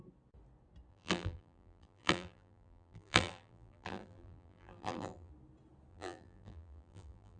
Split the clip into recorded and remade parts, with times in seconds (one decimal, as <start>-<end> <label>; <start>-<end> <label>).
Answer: 0.0-0.9 recorded; 0.9-5.3 remade; 5.3-5.9 recorded; 5.9-7.4 remade